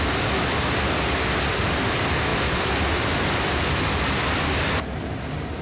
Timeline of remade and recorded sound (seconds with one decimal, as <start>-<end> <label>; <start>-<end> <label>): 0.0-5.6 recorded